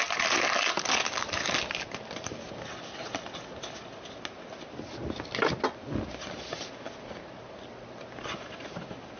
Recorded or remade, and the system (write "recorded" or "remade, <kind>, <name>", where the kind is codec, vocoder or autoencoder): recorded